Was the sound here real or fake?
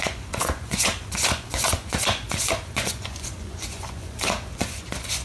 fake